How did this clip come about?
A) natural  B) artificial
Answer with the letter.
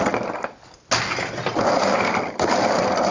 A